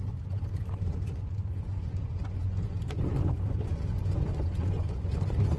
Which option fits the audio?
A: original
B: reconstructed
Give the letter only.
B